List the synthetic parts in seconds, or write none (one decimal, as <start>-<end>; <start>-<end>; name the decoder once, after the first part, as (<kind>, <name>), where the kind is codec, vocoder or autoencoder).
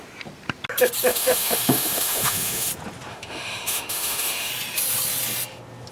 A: 1.1-2.7 (autoencoder, DAC-VAE); 3.1-4.5